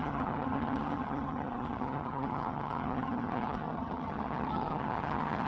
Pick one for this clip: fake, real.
fake